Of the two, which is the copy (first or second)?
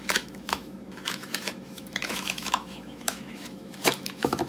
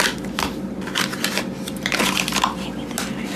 first